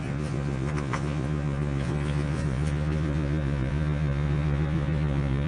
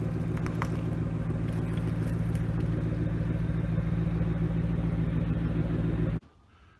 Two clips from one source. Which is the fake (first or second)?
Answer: first